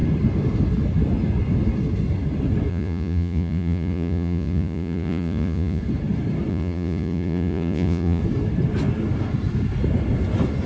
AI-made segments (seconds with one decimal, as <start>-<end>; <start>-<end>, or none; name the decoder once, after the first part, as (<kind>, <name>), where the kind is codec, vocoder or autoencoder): 2.7-5.8 (vocoder, Vocos); 6.5-8.2